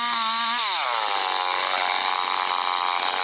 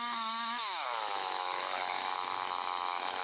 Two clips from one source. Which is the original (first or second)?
first